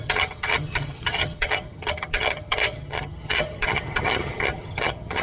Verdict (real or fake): fake